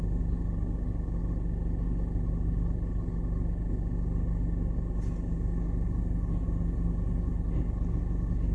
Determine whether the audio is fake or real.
real